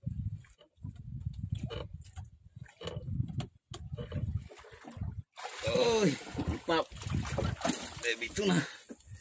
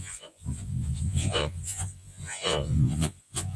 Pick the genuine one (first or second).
first